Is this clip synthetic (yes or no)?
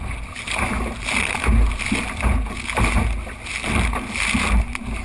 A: no